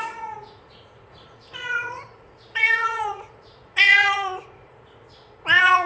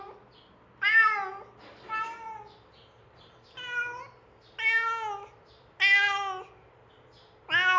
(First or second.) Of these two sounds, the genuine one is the second